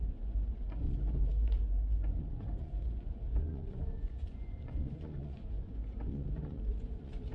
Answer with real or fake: fake